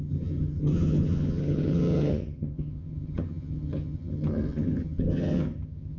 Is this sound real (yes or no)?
no